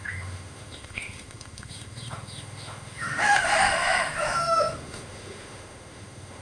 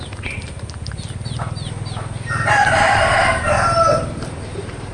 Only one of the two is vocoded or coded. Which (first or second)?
first